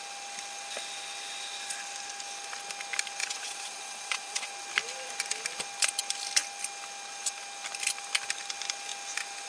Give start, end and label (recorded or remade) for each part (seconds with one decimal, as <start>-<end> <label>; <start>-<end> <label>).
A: 0.0-3.2 recorded; 3.2-4.5 remade; 4.5-9.5 recorded